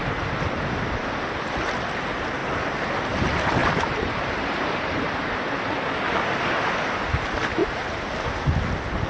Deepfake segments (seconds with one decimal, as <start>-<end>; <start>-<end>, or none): 3.6-5.5; 7.6-8.1

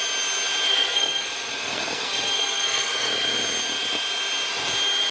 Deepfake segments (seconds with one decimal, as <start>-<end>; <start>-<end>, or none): 0.7-3.1

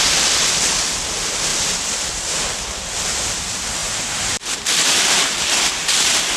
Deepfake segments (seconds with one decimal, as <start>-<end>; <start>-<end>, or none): 1.5-2.5; 3.8-5.7

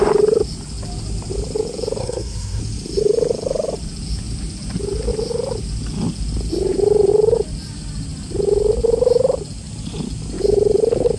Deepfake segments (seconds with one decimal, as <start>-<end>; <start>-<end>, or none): 2.0-2.6

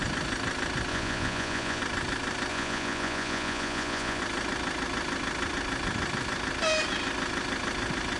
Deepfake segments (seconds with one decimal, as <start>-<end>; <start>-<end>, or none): 0.9-1.8; 2.5-4.2

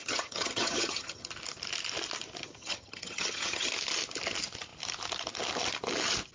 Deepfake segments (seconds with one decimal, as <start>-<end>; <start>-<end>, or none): 0.0-1.3; 2.6-3.7

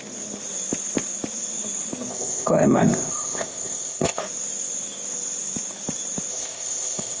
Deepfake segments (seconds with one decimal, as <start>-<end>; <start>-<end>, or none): 2.1-4.2; 6.3-7.2